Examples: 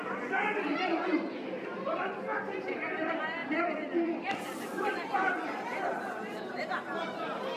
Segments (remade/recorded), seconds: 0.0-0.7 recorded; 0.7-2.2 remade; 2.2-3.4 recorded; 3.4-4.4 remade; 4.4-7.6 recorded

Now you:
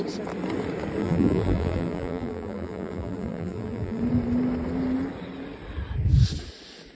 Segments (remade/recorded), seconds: 0.0-1.0 recorded; 1.0-4.0 remade; 4.0-6.9 recorded

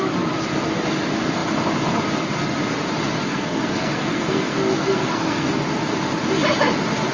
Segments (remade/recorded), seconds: 0.0-3.3 recorded; 3.3-5.5 remade; 5.5-7.1 recorded

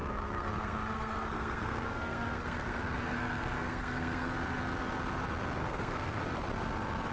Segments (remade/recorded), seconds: 0.0-4.3 remade; 4.3-5.6 recorded; 5.6-6.2 remade; 6.2-7.1 recorded